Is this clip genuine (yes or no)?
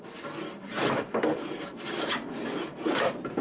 yes